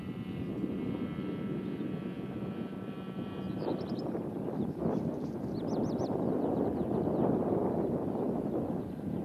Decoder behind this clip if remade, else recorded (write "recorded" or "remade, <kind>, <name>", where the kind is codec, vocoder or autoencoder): recorded